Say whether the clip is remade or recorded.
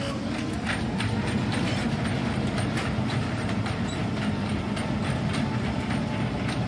recorded